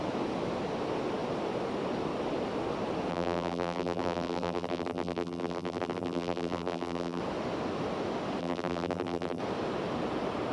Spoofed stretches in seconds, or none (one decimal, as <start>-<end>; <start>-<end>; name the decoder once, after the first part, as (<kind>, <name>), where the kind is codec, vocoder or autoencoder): 3.1-7.2 (vocoder, BigVGAN v2); 8.4-9.4